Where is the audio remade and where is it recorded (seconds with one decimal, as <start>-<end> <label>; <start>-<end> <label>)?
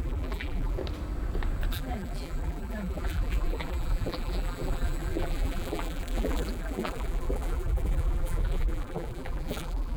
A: 0.0-0.8 remade; 0.8-1.7 recorded; 1.7-10.0 remade